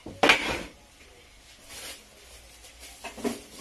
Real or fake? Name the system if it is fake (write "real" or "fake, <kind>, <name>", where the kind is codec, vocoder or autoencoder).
real